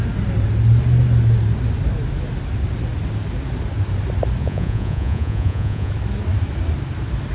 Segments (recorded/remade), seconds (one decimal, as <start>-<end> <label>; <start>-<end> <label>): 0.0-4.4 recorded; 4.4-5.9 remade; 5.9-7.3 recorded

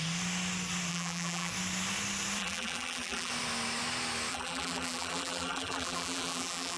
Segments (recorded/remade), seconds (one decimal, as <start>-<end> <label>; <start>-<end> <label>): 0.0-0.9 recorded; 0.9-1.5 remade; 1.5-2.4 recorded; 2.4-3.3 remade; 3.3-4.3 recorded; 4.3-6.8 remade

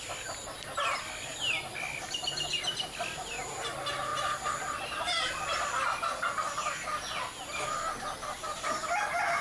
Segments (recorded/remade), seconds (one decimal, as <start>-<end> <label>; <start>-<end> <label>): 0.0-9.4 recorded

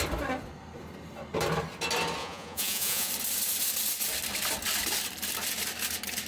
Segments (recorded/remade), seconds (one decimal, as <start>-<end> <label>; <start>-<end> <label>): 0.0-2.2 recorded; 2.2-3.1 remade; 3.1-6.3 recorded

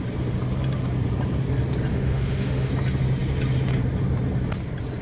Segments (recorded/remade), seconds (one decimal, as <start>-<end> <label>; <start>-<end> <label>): 0.0-1.9 recorded; 1.9-2.7 remade; 2.7-5.0 recorded